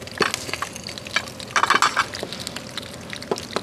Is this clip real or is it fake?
real